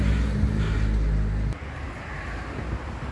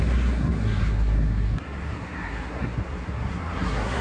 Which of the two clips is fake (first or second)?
second